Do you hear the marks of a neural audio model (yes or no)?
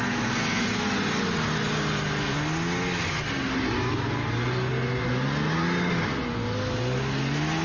no